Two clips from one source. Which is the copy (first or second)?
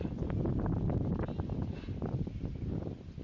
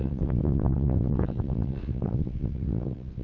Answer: second